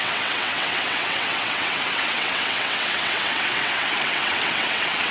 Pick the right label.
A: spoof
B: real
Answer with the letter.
A